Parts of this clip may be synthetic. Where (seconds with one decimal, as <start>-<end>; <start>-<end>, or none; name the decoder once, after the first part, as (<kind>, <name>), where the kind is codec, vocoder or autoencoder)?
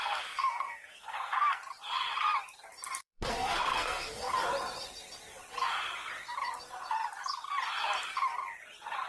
0.0-1.6 (codec, SNAC); 3.0-4.3